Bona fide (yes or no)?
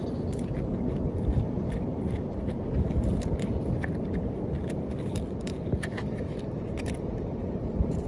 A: no